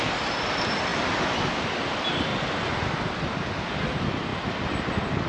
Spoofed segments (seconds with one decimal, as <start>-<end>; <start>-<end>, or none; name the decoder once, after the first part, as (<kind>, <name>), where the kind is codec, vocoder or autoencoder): 0.0-2.3 (vocoder, BigVGAN v2); 3.6-4.3